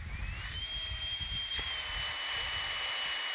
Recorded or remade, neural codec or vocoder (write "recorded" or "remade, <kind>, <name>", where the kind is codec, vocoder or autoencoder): recorded